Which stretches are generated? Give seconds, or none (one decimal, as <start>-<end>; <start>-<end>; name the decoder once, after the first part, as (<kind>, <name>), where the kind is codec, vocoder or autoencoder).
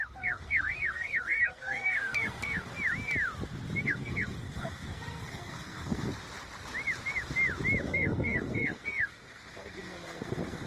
0.0-2.7 (codec, SNAC); 3.8-6.1; 7.8-10.7